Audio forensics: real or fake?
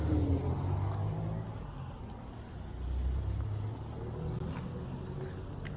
real